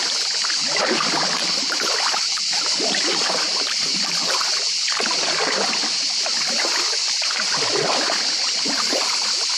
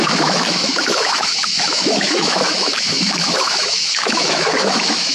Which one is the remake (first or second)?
second